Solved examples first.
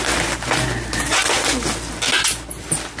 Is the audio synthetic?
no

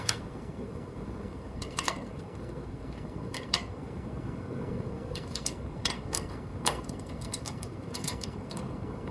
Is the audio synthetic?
yes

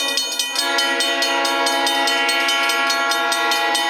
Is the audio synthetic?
no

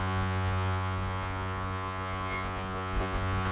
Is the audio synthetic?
yes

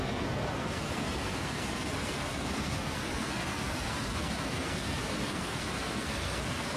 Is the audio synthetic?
yes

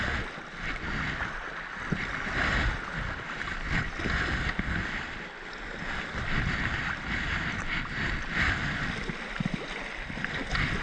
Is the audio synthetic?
no